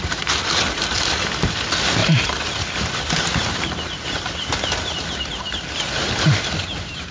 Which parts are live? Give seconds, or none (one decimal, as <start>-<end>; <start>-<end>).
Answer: 0.0-7.1